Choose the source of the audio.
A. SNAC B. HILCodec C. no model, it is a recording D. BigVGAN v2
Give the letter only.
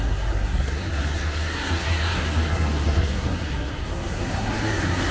A